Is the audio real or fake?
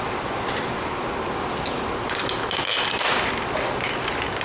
real